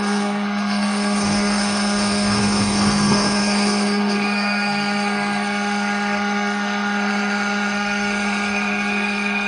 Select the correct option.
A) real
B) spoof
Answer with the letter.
B